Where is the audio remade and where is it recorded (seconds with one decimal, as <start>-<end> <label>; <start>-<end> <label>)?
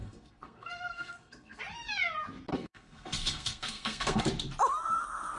0.0-1.6 remade; 1.6-2.5 recorded; 2.5-4.2 remade; 4.2-5.4 recorded